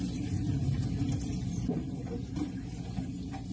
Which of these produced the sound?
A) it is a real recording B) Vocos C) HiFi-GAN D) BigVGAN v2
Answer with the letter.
D